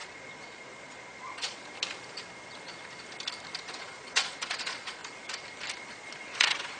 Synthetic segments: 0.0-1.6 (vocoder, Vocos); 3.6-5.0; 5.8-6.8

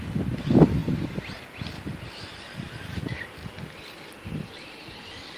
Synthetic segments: none

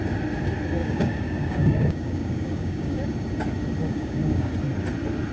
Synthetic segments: 0.8-3.0 (codec, DAC); 3.8-4.5

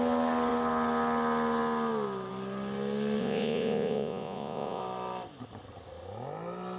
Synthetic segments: 3.2-4.8 (vocoder, Vocos)

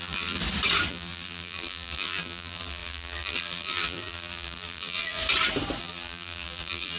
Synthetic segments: 0.0-0.4 (vocoder, BigVGAN v2); 0.9-5.2; 5.8-7.0